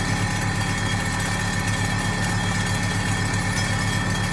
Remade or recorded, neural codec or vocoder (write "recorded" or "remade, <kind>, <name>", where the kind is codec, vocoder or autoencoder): recorded